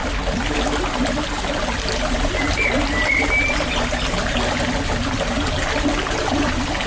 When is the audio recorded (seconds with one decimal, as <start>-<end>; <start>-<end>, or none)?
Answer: 0.0-6.9